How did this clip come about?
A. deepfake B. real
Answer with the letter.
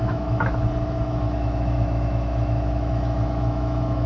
A